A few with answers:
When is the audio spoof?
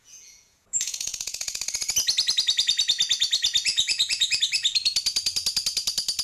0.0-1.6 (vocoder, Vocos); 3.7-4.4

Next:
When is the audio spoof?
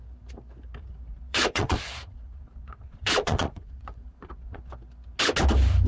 1.1-4.6 (vocoder, Vocos)